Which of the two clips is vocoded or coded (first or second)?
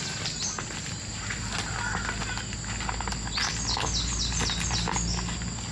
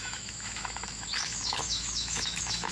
second